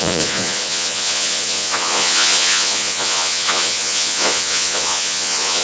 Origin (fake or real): fake